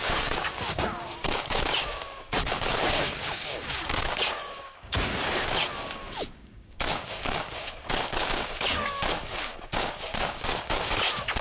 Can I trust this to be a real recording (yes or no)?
no